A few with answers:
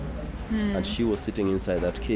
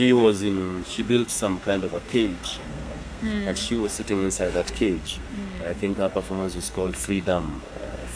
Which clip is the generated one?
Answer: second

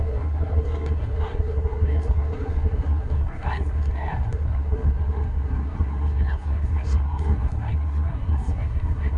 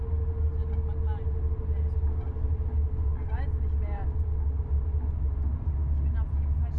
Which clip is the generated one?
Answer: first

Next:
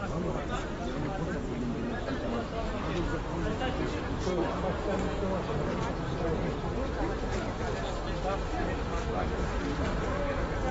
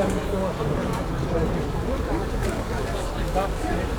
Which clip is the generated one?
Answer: second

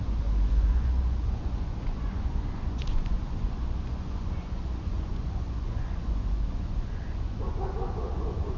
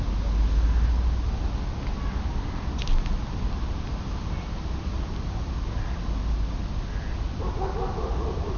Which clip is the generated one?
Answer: first